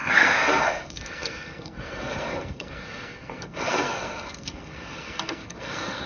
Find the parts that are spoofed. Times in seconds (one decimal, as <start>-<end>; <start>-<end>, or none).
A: 0.0-6.1

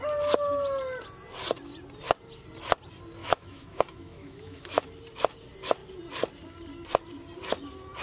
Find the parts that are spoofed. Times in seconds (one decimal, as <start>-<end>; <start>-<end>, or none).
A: 3.2-4.9

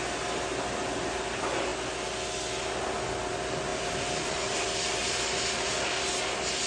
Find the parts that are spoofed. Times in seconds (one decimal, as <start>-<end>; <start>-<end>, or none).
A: 3.7-4.6; 5.0-6.1

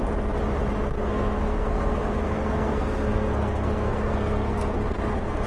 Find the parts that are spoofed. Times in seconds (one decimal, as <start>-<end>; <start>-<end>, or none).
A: 0.9-5.5

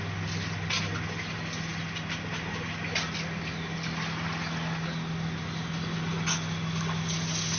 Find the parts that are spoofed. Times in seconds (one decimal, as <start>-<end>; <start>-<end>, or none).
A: none

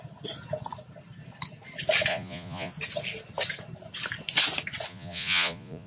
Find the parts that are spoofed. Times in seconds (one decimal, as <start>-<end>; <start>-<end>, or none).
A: 2.1-2.7; 4.9-5.9

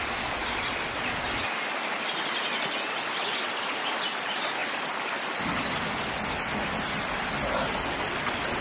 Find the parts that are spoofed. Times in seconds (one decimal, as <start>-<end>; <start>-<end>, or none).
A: none

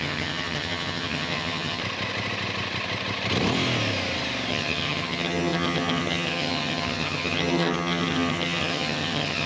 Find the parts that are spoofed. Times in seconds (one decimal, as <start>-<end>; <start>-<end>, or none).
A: 0.0-1.8; 4.5-9.5